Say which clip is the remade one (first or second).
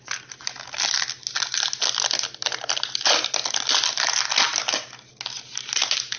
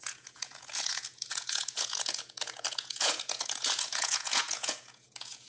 second